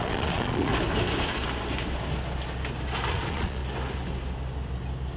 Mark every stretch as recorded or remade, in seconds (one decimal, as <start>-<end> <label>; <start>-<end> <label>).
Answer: 0.0-0.7 remade; 0.7-3.1 recorded; 3.1-3.6 remade; 3.6-5.2 recorded